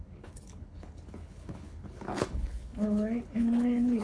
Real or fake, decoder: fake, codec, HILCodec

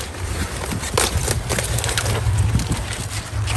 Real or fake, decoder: real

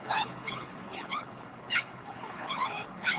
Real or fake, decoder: fake, codec, HILCodec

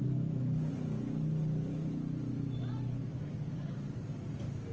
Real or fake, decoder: real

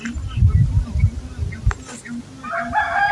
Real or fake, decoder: real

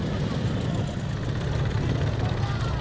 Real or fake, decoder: real